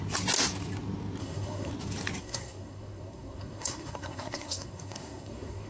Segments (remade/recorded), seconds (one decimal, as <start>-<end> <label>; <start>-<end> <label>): 0.0-1.2 recorded; 1.2-1.7 remade; 1.7-2.2 recorded; 2.2-5.7 remade